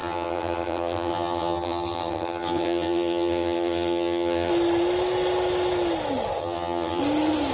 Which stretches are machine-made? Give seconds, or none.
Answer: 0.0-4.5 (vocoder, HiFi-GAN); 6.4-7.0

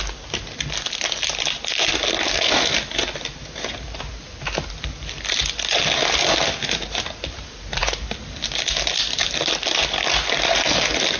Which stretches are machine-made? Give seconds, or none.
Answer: none

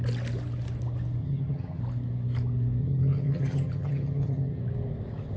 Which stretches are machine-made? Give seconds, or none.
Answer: 1.2-1.8 (vocoder, HiFi-GAN); 2.8-4.6

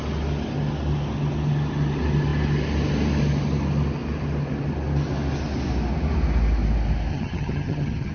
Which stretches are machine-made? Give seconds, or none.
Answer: 7.1-8.1 (vocoder, HiFi-GAN)

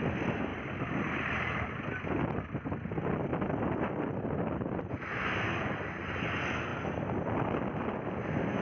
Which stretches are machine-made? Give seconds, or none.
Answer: none